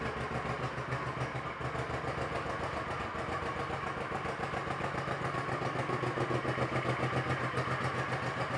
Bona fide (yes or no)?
yes